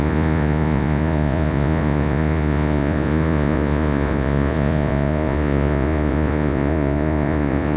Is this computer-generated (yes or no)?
yes